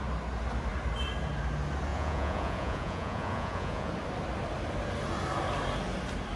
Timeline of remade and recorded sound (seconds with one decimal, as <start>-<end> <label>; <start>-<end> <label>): 0.0-1.9 recorded; 1.9-3.9 remade; 3.9-6.4 recorded

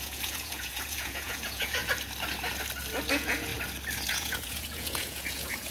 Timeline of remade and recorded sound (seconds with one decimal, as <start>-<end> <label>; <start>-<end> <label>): 0.0-1.8 remade; 1.8-3.1 recorded; 3.1-3.5 remade; 3.5-4.1 recorded; 4.1-5.7 remade

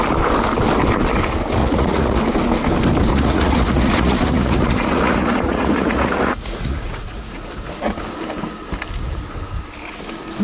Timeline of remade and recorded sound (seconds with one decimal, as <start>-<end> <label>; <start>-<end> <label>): 0.0-1.6 recorded; 1.6-2.2 remade; 2.2-3.1 recorded; 3.1-7.5 remade; 7.5-10.4 recorded

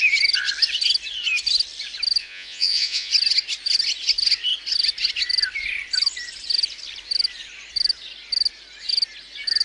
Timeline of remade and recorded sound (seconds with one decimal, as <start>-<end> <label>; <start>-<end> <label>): 0.0-2.2 recorded; 2.2-3.1 remade; 3.1-9.6 recorded

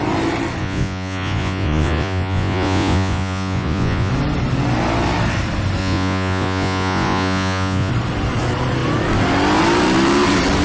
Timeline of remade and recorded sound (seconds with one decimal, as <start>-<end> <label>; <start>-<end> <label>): 0.0-0.6 recorded; 0.6-4.1 remade; 4.1-5.8 recorded; 5.8-7.9 remade; 7.9-10.6 recorded